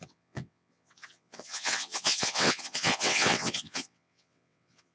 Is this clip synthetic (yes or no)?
yes